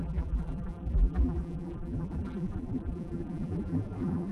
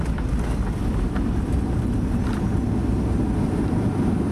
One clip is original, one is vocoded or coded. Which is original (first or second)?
second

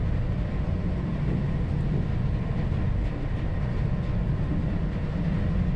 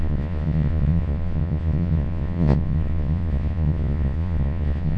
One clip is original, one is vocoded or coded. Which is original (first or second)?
first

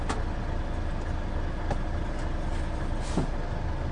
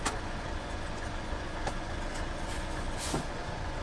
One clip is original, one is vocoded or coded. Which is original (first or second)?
first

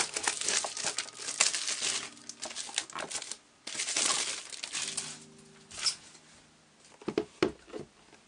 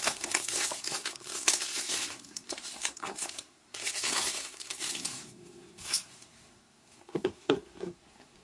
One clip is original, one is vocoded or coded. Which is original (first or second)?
first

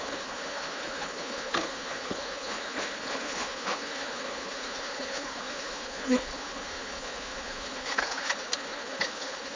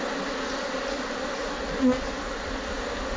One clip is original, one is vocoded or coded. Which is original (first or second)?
second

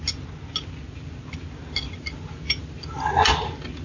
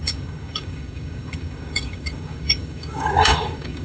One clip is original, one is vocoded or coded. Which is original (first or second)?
first